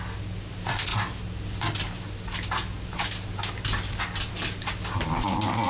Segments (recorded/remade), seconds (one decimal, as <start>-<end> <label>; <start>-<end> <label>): 0.0-5.7 recorded